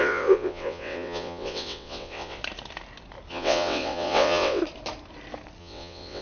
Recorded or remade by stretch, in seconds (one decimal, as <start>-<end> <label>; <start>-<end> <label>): 0.0-2.4 remade; 2.4-3.3 recorded; 3.3-4.6 remade; 4.6-5.6 recorded; 5.6-6.2 remade